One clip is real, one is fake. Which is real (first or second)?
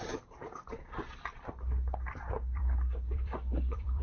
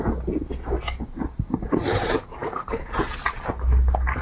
second